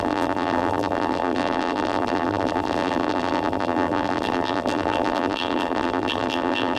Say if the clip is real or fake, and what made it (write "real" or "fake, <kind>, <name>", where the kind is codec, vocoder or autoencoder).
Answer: fake, vocoder, BigVGAN v2